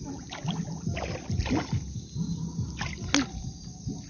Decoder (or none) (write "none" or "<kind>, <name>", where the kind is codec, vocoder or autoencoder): none